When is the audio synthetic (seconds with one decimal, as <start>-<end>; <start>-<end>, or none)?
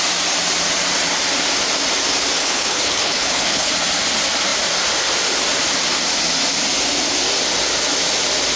2.4-3.7